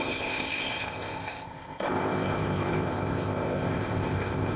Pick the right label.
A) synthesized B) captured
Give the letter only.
A